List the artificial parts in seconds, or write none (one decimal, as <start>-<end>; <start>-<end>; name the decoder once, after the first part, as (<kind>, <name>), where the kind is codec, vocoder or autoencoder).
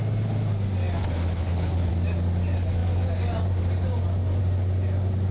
1.0-1.9 (codec, HILCodec)